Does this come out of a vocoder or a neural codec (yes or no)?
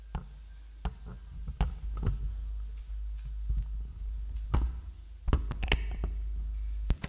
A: no